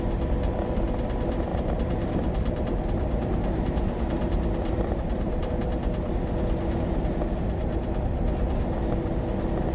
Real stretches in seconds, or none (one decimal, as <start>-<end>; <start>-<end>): 0.0-1.5; 5.5-9.7

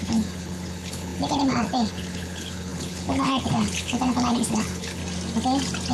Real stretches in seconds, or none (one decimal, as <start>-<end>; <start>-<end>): 5.0-5.9

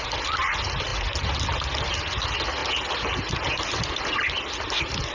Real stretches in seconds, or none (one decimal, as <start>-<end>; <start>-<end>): 0.0-5.1

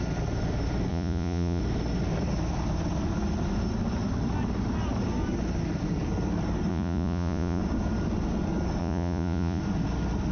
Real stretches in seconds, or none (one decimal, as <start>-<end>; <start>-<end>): 0.0-0.9; 1.6-6.7; 7.6-8.8; 9.6-10.3

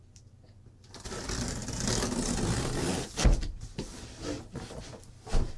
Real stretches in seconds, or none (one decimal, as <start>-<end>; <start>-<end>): 0.0-5.6

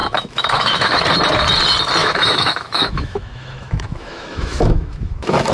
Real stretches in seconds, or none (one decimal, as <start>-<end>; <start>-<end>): 1.0-2.0

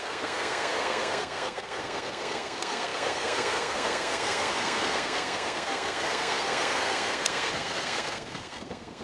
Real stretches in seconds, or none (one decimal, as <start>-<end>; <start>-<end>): none

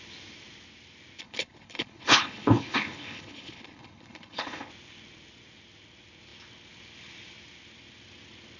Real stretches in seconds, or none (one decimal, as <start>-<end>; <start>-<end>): 0.0-1.2; 4.7-8.6